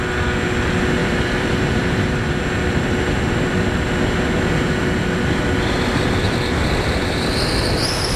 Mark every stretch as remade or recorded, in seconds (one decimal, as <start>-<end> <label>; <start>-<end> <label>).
0.0-1.0 recorded; 1.0-2.4 remade; 2.4-8.2 recorded